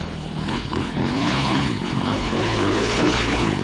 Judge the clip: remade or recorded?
remade